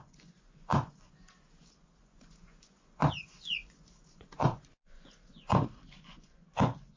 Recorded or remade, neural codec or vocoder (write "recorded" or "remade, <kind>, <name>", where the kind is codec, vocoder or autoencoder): remade, vocoder, Vocos